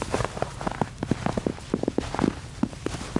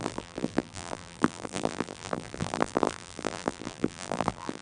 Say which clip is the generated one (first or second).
second